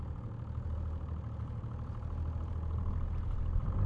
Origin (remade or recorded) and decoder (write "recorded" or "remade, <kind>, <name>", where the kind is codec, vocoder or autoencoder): recorded